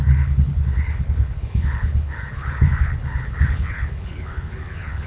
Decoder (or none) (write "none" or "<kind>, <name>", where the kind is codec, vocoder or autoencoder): codec, HILCodec